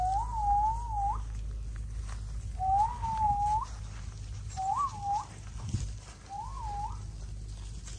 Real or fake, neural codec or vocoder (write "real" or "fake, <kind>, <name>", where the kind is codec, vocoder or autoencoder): real